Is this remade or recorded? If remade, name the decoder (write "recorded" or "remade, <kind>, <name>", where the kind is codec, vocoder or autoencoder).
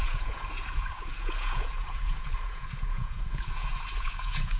remade, vocoder, Vocos